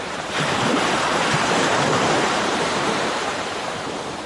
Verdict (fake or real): fake